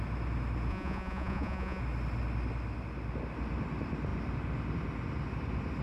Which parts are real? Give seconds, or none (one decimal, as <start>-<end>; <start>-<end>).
0.0-0.7; 1.8-5.8